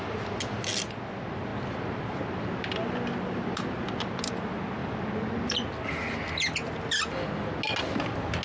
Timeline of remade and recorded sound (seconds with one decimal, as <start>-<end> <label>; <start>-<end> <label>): 0.0-8.4 recorded